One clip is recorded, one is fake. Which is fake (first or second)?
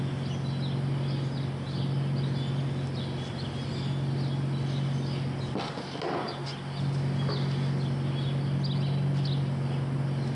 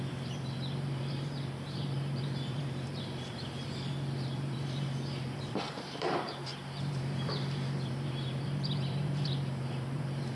second